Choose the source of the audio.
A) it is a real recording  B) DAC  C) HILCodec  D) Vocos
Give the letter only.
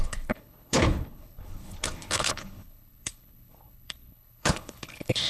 C